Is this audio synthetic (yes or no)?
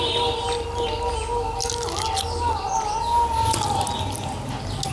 no